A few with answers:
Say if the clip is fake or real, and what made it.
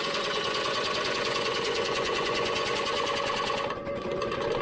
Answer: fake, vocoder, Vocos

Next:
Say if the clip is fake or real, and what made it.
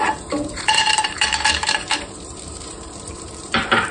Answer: fake, vocoder, BigVGAN v2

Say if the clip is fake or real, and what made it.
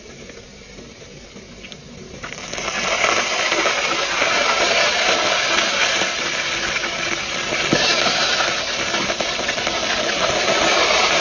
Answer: real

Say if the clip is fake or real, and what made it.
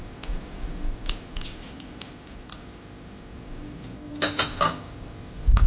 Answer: real